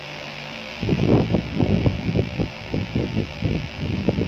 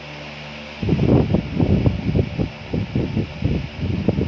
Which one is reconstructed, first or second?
first